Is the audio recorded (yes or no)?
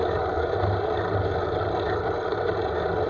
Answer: yes